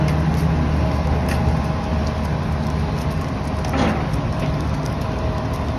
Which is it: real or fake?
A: real